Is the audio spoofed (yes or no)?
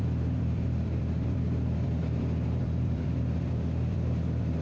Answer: yes